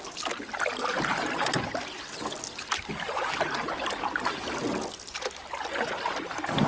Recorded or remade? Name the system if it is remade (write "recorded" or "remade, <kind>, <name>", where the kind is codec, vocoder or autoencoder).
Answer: recorded